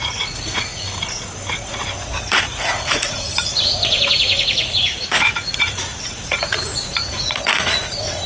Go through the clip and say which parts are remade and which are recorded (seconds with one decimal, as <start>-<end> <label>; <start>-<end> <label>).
0.0-0.7 remade; 0.7-1.5 recorded; 1.5-8.3 remade